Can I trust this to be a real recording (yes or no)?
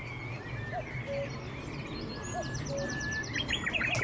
yes